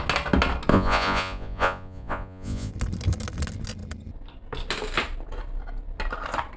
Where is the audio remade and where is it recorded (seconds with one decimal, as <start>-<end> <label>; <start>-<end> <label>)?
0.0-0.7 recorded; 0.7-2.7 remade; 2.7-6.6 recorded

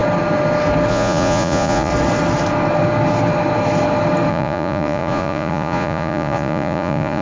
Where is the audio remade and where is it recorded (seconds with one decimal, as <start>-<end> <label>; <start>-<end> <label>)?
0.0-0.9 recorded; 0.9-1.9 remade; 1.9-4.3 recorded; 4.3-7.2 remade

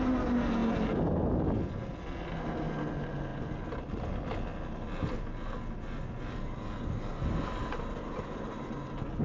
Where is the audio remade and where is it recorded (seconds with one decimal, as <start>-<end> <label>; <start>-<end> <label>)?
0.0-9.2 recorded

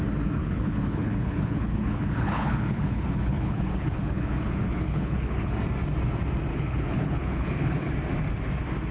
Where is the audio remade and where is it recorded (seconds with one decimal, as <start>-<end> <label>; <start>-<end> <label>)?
0.0-0.4 recorded; 0.4-5.5 remade; 5.5-6.5 recorded; 6.5-7.9 remade; 7.9-8.9 recorded

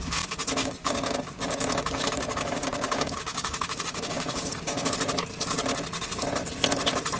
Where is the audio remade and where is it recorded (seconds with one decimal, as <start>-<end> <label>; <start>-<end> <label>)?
0.0-0.6 recorded; 0.6-4.9 remade; 4.9-7.2 recorded